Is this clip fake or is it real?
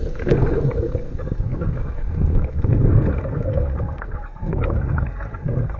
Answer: fake